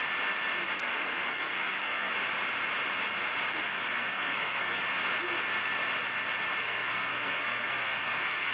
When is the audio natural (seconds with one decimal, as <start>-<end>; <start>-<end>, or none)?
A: 0.0-0.8; 2.1-3.5; 4.8-6.6